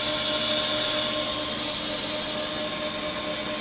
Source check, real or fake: real